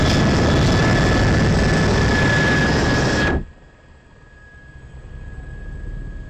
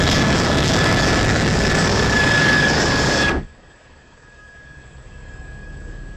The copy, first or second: second